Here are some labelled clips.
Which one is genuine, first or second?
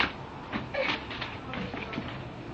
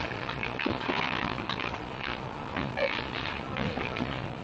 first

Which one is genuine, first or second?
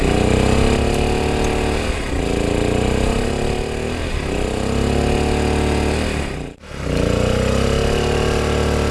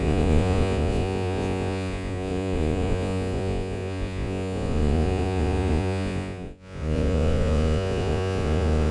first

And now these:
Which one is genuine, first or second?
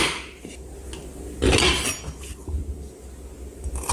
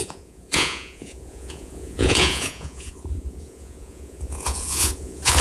first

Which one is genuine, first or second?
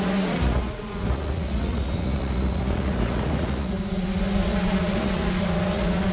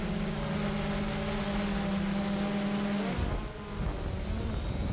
second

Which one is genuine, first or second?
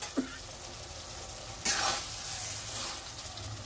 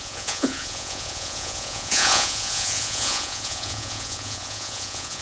first